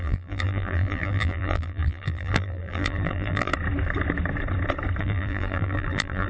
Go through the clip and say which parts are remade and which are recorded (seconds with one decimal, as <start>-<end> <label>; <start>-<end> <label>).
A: 0.0-3.5 remade; 3.5-5.0 recorded; 5.0-6.3 remade